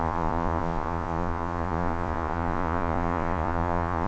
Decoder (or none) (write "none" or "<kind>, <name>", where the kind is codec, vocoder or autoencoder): vocoder, Vocos